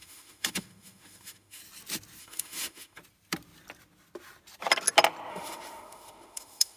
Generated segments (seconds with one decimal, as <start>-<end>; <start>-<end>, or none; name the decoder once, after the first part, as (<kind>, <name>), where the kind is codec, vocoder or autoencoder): 0.0-1.6 (autoencoder, DAC-VAE); 2.2-3.0; 5.3-6.8